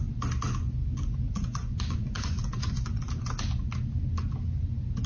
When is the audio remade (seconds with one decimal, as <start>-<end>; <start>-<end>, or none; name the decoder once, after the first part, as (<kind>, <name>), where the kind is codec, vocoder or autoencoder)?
0.8-3.1 (vocoder, Vocos)